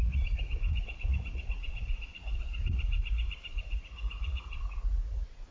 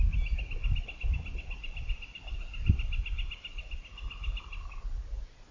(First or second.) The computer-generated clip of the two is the first